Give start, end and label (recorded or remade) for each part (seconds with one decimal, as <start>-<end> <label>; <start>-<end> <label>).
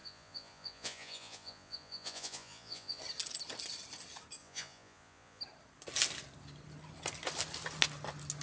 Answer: 0.0-3.0 remade; 3.0-4.4 recorded; 4.4-5.4 remade; 5.4-8.4 recorded